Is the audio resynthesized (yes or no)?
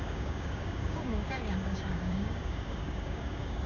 yes